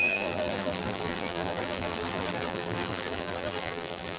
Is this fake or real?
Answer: fake